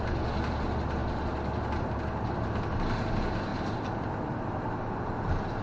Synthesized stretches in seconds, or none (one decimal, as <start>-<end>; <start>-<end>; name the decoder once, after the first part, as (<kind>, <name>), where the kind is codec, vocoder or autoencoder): none